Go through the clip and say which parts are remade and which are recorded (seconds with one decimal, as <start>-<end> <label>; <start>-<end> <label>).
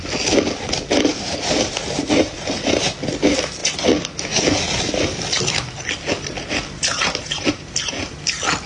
0.0-1.1 recorded; 1.1-2.9 remade; 2.9-6.9 recorded; 6.9-7.9 remade; 7.9-8.7 recorded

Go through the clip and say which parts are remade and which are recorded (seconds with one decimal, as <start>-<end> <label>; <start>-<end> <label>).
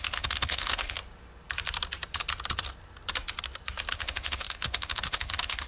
0.0-1.0 remade; 1.0-3.9 recorded; 3.9-5.7 remade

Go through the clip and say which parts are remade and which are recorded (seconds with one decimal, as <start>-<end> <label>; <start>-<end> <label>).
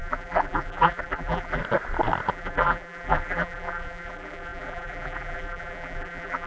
0.0-1.6 remade; 1.6-2.3 recorded; 2.3-6.5 remade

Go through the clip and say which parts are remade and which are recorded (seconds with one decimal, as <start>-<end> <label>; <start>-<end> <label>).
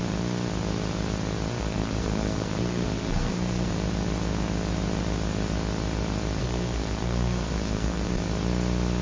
0.0-1.6 recorded; 1.6-3.7 remade; 3.7-6.4 recorded; 6.4-8.1 remade; 8.1-9.0 recorded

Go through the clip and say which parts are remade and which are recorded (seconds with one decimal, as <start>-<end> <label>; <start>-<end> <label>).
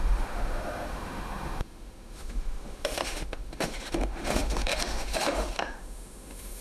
0.0-6.6 remade